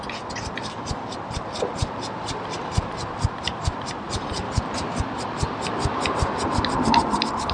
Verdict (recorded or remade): recorded